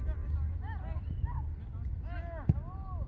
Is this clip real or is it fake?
real